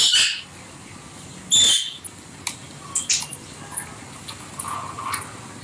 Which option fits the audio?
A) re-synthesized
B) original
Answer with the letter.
B